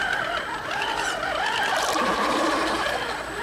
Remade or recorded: remade